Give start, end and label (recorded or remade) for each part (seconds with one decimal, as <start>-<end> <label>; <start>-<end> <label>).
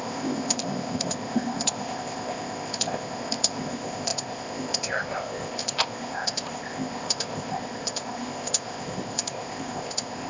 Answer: 0.0-10.3 remade